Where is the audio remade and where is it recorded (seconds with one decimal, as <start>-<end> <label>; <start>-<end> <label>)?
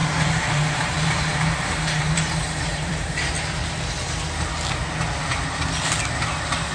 0.0-3.3 remade; 3.3-6.7 recorded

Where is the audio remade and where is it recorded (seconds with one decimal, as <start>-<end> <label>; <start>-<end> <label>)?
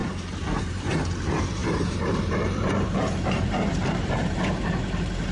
0.0-0.6 recorded; 0.6-5.3 remade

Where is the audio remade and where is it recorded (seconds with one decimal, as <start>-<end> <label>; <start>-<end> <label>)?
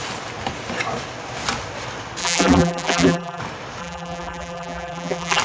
0.0-2.2 recorded; 2.2-3.4 remade; 3.4-3.8 recorded; 3.8-5.4 remade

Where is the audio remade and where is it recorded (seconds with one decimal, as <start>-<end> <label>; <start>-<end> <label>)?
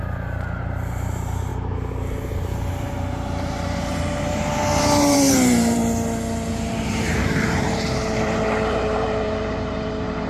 0.0-1.5 remade; 1.5-2.7 recorded; 2.7-5.8 remade; 5.8-6.5 recorded; 6.5-10.3 remade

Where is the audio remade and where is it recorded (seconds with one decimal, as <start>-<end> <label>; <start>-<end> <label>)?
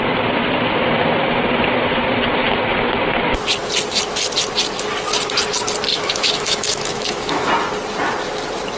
0.0-5.9 recorded; 5.9-7.5 remade; 7.5-8.8 recorded